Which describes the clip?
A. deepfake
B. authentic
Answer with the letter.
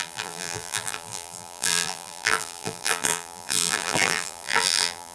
A